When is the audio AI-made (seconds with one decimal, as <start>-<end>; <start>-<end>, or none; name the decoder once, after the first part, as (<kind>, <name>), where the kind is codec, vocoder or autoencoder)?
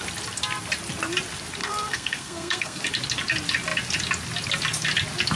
1.6-2.8 (codec, SNAC)